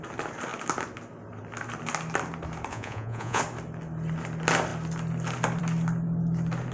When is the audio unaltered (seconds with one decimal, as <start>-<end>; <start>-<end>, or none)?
0.0-2.7; 3.4-6.7